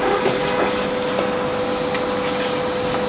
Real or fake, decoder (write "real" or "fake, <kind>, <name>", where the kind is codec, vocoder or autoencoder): real